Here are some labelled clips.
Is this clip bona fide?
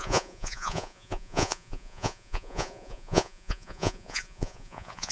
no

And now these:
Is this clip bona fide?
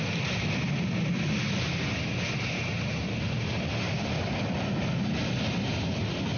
yes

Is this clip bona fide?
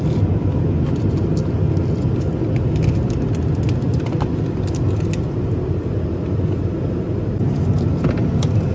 yes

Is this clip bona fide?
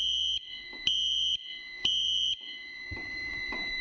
no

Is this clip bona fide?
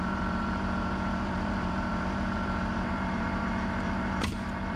no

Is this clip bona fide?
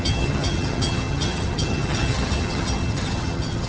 no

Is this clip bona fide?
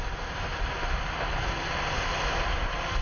yes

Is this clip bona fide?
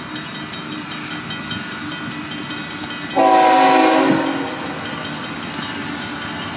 yes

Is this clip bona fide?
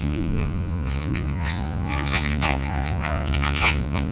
no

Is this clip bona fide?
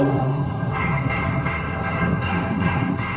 no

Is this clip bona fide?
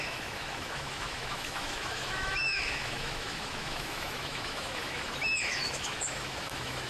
no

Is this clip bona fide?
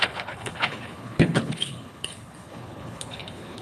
no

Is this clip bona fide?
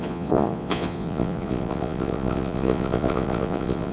no